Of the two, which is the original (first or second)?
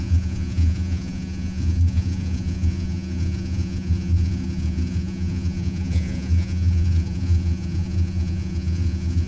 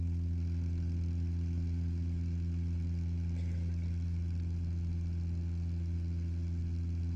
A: second